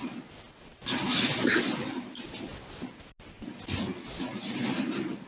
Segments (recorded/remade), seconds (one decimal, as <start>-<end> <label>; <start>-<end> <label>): 0.0-5.3 recorded